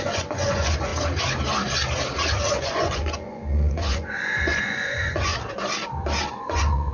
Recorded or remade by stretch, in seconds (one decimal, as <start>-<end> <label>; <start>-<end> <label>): 0.0-0.9 remade; 0.9-2.6 recorded; 2.6-5.3 remade; 5.3-6.3 recorded; 6.3-6.9 remade